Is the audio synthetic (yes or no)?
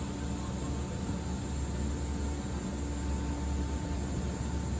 no